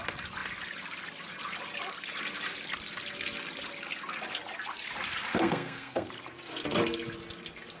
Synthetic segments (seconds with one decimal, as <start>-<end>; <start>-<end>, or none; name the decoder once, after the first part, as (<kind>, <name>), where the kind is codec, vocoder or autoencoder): 5.3-6.1 (codec, SNAC)